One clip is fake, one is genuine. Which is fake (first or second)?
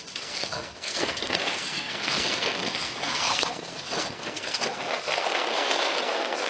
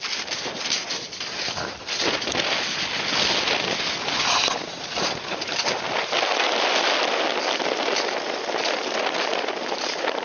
first